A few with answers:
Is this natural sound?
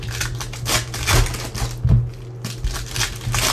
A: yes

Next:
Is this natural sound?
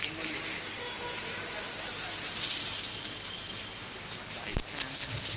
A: yes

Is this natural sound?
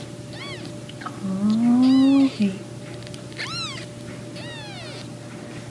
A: yes